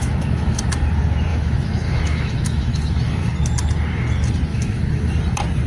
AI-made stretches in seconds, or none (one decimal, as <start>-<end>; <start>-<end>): 0.0-0.6; 1.3-3.3; 4.5-5.1